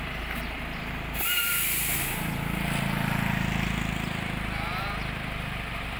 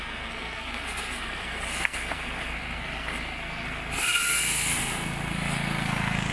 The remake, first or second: second